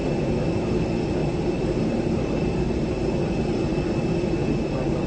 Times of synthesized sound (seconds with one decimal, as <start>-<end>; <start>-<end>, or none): 1.2-3.8